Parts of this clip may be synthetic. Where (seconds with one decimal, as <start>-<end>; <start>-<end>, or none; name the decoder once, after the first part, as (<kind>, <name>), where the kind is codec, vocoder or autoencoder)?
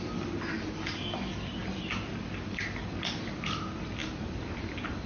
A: none